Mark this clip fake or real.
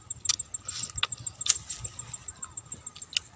real